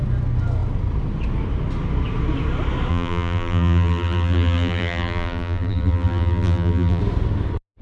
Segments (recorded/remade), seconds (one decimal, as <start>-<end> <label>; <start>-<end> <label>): 0.0-2.9 recorded; 2.9-7.0 remade; 7.0-7.8 recorded